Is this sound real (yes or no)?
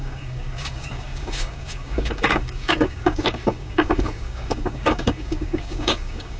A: no